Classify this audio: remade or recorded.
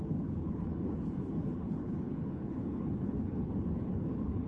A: remade